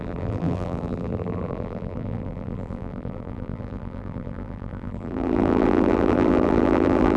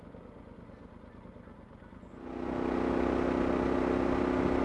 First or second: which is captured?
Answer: second